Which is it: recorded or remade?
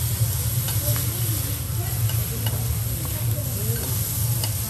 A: recorded